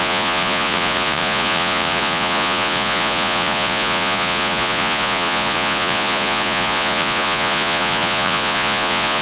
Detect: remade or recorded remade